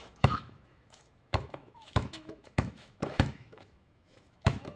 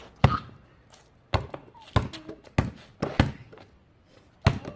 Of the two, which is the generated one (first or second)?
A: first